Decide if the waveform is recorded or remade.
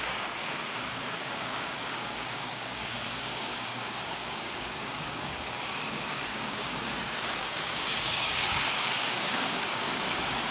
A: remade